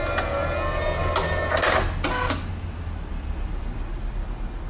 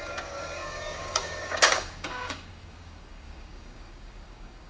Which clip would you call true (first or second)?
first